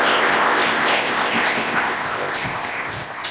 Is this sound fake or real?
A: fake